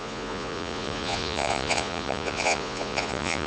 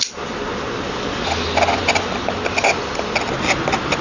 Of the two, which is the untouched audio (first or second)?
second